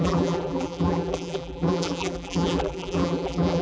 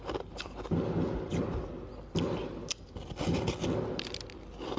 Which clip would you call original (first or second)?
second